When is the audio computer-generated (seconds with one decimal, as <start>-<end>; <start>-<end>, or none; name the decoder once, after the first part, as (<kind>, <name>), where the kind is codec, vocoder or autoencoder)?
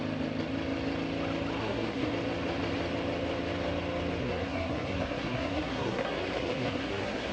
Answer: 1.6-2.1 (codec, SNAC); 4.2-7.3